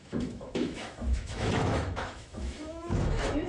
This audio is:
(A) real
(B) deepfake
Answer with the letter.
B